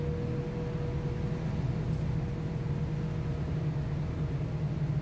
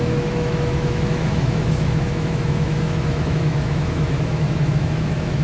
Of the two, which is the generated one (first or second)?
second